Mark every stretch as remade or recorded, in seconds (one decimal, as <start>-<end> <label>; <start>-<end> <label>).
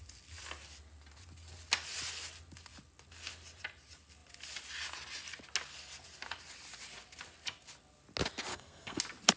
0.0-8.5 recorded; 8.5-9.0 remade; 9.0-9.4 recorded